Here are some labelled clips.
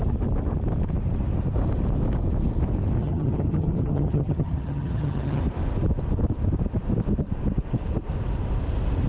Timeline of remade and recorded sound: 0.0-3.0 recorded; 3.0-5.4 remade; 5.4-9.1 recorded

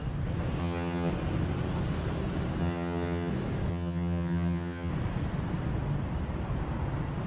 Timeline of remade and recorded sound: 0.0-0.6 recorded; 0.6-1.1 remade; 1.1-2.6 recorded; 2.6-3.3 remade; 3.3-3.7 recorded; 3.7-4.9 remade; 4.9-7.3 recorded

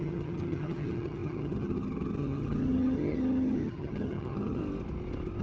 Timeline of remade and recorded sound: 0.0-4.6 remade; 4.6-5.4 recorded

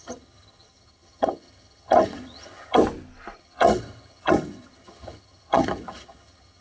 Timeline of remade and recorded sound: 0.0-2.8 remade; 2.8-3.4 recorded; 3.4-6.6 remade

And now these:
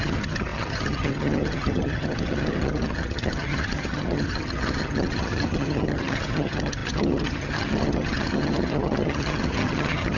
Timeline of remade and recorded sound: 0.0-10.2 remade

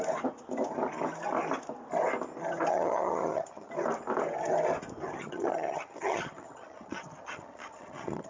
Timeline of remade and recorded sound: 0.0-2.7 recorded; 2.7-3.7 remade; 3.7-5.2 recorded; 5.2-8.3 remade

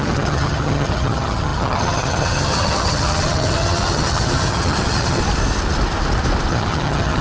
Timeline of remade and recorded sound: 0.0-5.2 remade; 5.2-6.5 recorded; 6.5-7.2 remade